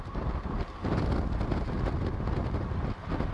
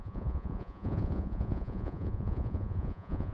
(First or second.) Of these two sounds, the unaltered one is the first